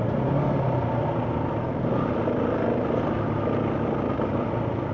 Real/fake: real